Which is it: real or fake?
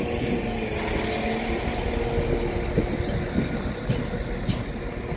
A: real